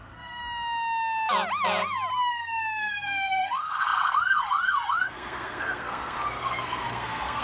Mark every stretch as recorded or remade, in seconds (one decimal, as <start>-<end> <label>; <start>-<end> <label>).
0.0-0.4 remade; 0.4-2.3 recorded; 2.3-7.4 remade